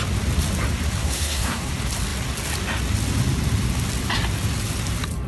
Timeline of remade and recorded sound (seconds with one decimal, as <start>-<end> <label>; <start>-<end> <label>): 0.0-1.0 recorded; 1.0-1.7 remade; 1.7-5.3 recorded